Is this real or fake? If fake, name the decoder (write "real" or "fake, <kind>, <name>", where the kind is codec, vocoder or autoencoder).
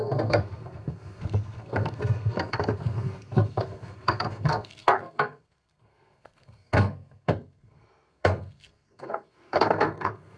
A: fake, codec, SNAC